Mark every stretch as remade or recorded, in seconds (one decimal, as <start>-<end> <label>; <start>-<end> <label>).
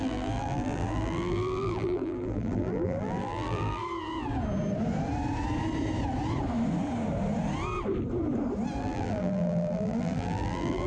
0.0-3.8 remade; 3.8-8.8 recorded; 8.8-10.9 remade